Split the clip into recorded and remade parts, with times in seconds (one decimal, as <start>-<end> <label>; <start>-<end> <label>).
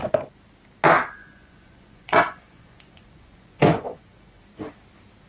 0.0-1.2 recorded; 1.2-4.4 remade; 4.4-5.3 recorded